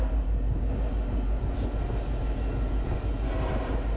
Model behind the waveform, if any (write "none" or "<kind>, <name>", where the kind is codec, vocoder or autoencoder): none